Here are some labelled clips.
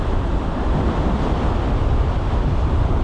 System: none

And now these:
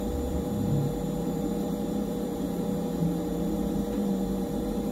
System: vocoder, BigVGAN v2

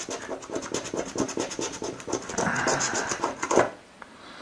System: none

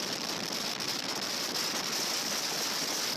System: vocoder, BigVGAN v2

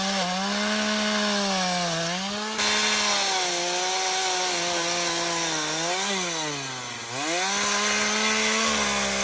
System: none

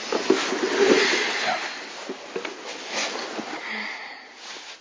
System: none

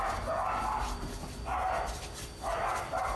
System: none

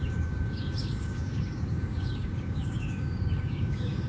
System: codec, DAC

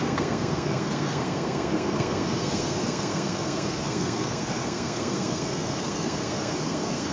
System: codec, SNAC